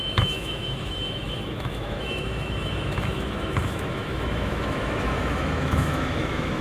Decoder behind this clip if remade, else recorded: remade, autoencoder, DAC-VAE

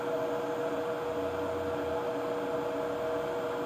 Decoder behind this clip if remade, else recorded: recorded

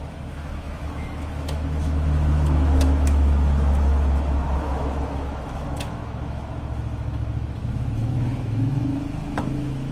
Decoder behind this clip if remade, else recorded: remade, autoencoder, DAC-VAE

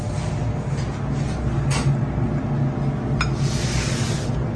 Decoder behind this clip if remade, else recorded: recorded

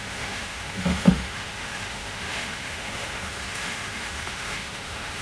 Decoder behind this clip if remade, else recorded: remade, autoencoder, DAC-VAE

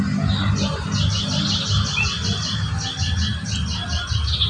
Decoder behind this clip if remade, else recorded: recorded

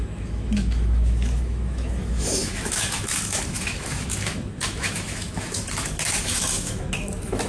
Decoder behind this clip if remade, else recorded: remade, autoencoder, DAC-VAE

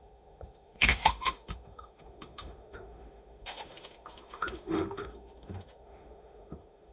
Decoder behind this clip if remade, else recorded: remade, autoencoder, DAC-VAE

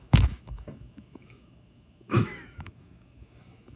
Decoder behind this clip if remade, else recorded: remade, autoencoder, DAC-VAE